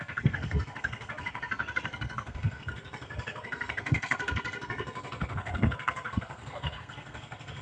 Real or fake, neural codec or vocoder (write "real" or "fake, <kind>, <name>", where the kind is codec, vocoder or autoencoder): fake, codec, SNAC